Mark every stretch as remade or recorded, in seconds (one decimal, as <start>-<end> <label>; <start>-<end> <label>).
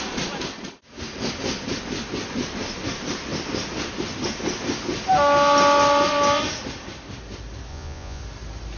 0.0-7.7 recorded; 7.7-8.2 remade; 8.2-8.8 recorded